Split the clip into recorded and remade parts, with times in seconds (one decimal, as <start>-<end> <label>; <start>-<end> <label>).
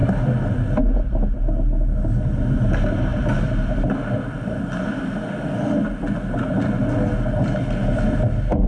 0.0-8.7 recorded